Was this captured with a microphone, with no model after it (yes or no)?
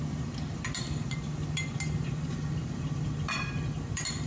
yes